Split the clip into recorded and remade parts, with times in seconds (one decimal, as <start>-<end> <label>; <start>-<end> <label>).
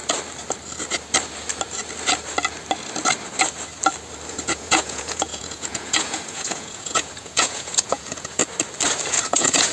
0.0-4.3 recorded; 4.3-8.4 remade; 8.4-9.1 recorded; 9.1-9.7 remade